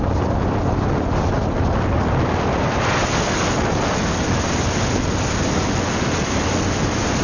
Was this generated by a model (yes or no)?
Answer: no